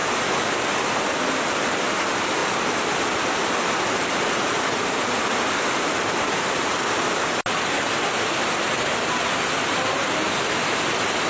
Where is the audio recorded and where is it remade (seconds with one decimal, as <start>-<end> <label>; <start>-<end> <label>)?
0.0-1.8 remade; 1.8-2.4 recorded; 2.4-7.1 remade; 7.1-11.3 recorded